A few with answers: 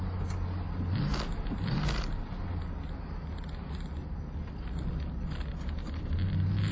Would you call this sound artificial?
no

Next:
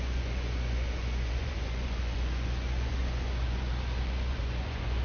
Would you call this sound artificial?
yes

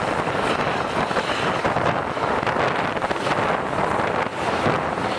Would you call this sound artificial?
no